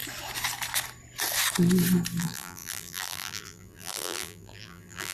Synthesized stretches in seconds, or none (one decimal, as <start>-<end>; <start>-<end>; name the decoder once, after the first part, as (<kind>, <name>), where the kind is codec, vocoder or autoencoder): 2.2-5.1 (vocoder, BigVGAN v2)